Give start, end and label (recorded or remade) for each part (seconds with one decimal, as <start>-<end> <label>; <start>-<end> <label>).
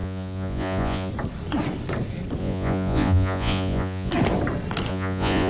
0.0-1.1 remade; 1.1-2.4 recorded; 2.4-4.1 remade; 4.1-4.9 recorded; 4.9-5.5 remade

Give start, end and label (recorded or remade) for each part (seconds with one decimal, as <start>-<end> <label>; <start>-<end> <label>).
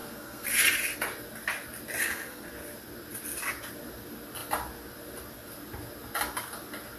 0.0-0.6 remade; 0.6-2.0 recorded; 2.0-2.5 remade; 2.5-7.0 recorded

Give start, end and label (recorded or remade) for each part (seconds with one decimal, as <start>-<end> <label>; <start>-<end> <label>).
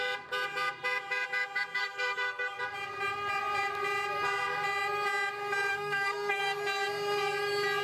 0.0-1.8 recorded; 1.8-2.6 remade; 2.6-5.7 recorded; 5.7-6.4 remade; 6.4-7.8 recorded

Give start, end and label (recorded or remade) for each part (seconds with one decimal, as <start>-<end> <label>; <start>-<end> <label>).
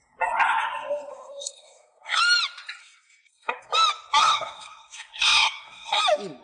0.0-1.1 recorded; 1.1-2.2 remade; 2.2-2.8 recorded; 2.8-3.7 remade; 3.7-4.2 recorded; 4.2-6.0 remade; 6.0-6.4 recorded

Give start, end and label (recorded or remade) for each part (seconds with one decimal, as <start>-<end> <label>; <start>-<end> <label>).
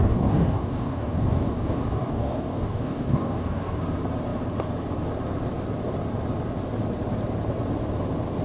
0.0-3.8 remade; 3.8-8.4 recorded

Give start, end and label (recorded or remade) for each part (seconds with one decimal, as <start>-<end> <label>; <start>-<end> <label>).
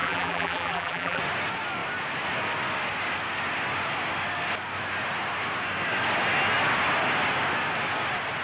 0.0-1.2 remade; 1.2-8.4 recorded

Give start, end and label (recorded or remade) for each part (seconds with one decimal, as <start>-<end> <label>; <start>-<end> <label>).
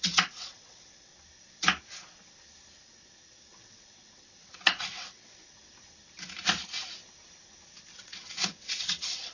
0.0-1.1 remade; 1.1-3.4 recorded; 3.4-5.3 remade; 5.3-7.9 recorded; 7.9-9.3 remade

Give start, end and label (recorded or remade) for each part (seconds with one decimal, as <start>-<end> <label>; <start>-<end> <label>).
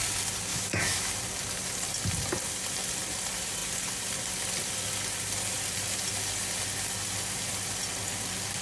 0.0-0.5 recorded; 0.5-1.1 remade; 1.1-8.6 recorded